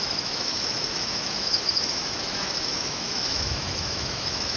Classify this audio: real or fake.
fake